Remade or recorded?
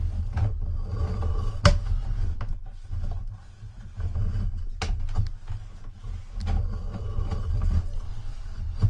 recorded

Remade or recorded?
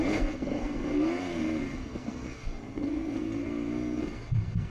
remade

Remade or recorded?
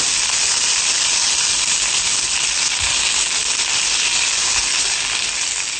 recorded